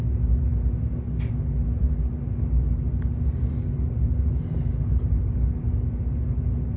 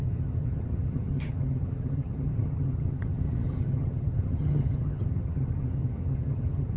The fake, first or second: second